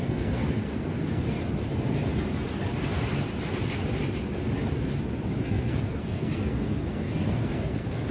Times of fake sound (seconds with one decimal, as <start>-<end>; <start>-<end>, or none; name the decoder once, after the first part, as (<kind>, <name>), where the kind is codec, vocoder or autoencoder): 0.0-1.4 (codec, SNAC); 5.4-8.1